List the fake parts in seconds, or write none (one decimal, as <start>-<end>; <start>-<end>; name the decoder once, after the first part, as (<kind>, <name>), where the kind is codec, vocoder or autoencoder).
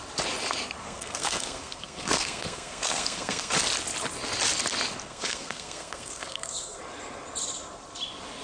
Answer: 0.8-3.5 (codec, SNAC); 5.0-6.8